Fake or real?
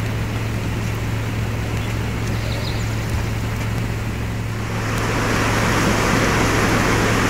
real